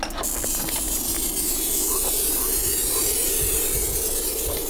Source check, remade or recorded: recorded